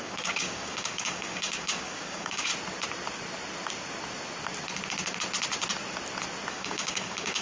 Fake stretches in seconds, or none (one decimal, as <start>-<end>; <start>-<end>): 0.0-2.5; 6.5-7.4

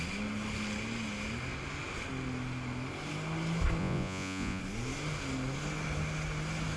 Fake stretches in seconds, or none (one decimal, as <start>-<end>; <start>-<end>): 3.8-4.6

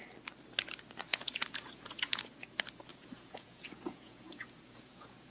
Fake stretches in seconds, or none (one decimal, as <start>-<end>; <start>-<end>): 1.1-2.2; 2.9-5.3

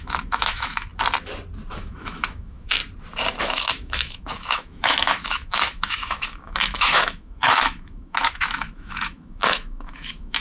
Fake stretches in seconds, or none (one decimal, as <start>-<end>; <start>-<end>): 0.0-0.9; 1.8-2.8; 3.4-10.4

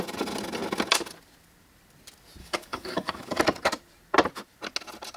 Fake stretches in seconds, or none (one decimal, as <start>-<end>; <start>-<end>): 2.4-3.4

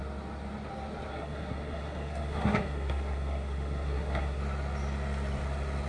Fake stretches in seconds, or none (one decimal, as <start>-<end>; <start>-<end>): 1.1-4.4